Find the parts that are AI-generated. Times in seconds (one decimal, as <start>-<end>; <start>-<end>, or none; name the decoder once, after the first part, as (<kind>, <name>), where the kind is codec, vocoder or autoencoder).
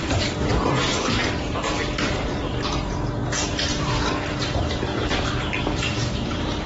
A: 1.2-2.5 (vocoder, BigVGAN v2); 4.9-6.7